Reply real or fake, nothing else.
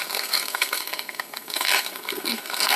fake